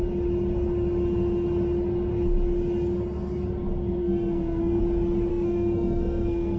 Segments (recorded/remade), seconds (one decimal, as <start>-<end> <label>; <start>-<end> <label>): 0.0-4.0 recorded; 4.0-4.8 remade; 4.8-5.3 recorded; 5.3-6.6 remade